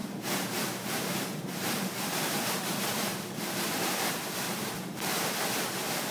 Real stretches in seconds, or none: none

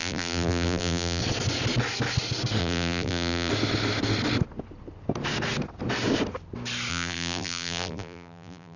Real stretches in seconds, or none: 1.2-2.6; 3.5-6.9

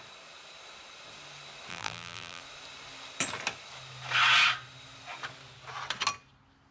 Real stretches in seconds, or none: 0.0-1.7; 2.4-6.7

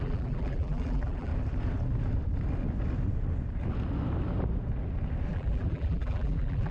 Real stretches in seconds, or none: 1.3-5.3

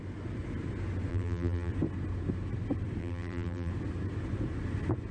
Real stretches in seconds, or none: 0.0-1.1; 1.7-3.0; 3.7-5.1

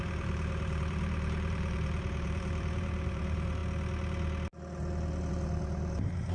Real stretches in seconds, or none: 3.6-5.3

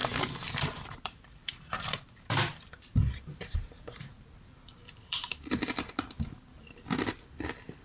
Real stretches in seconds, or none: 2.8-3.3; 5.5-7.8

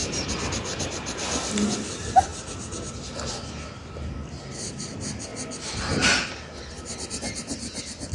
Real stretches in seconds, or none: 0.0-8.1